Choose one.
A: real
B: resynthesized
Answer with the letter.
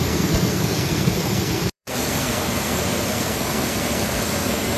B